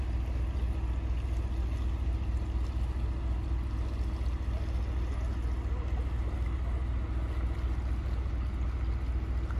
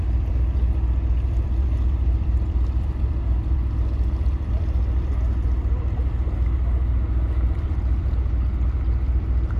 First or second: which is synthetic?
second